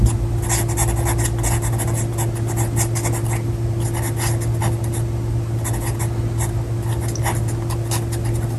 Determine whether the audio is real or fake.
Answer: real